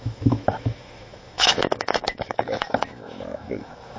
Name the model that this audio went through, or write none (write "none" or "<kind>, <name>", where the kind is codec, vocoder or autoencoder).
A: autoencoder, DAC-VAE